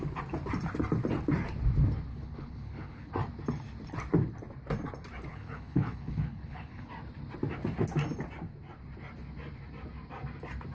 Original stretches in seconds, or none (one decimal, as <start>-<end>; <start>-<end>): 0.0-2.1; 3.1-5.3; 6.9-10.7